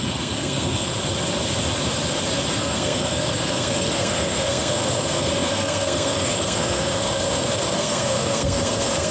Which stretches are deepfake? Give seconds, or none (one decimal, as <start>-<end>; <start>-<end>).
0.0-1.0; 2.6-9.1